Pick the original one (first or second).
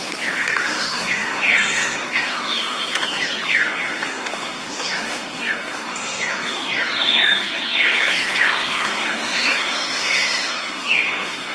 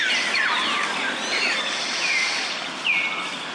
second